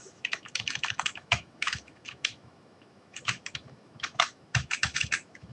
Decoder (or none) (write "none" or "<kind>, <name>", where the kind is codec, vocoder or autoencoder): autoencoder, DAC-VAE